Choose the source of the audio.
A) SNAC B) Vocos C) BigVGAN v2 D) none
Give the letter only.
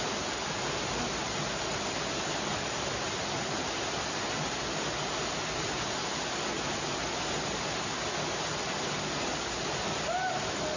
D